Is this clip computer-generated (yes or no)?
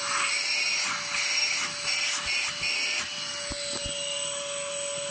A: no